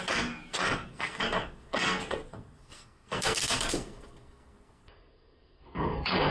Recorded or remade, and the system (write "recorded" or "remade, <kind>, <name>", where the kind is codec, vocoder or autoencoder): remade, codec, SNAC